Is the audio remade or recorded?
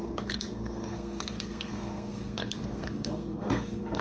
remade